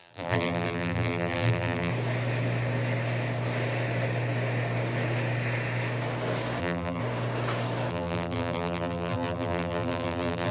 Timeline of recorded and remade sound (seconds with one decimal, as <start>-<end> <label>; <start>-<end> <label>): 0.0-1.9 remade; 1.9-6.6 recorded; 6.6-7.0 remade; 7.0-7.9 recorded; 7.9-10.5 remade